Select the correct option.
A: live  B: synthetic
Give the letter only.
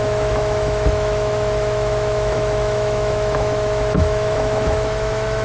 B